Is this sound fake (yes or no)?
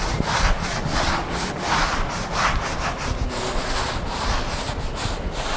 no